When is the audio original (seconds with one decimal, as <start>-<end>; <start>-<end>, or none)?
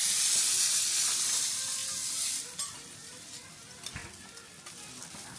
1.8-3.5; 4.0-4.7